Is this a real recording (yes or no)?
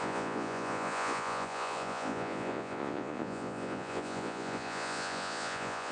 no